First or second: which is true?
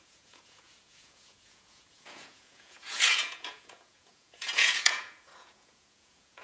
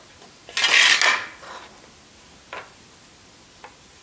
second